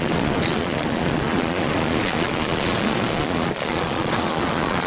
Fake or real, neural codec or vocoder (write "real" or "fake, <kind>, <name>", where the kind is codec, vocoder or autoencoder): fake, vocoder, Vocos